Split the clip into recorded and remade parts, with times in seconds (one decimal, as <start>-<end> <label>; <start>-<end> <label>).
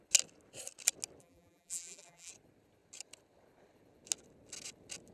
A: 0.0-1.2 recorded; 1.2-2.3 remade; 2.3-5.1 recorded